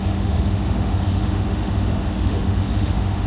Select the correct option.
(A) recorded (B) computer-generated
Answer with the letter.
B